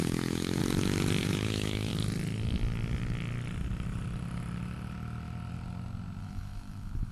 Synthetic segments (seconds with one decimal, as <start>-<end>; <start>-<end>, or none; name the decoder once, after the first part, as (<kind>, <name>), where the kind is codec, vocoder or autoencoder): 0.0-0.6 (autoencoder, DAC-VAE); 1.2-1.9; 6.2-7.1

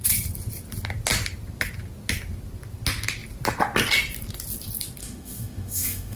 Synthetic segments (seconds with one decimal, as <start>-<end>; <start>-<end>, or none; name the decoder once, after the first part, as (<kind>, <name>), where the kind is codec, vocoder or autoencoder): 5.0-6.2 (autoencoder, DAC-VAE)

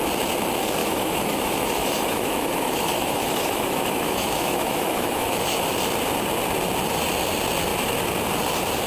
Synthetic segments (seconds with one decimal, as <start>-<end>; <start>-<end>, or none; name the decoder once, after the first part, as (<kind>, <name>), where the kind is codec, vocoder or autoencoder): 0.8-5.6 (autoencoder, DAC-VAE)

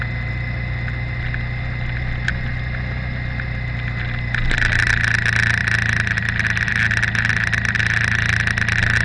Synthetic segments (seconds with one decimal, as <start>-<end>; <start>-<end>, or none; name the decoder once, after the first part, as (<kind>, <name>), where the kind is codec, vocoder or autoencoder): none